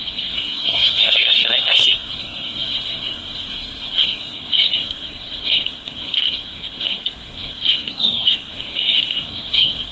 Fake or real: fake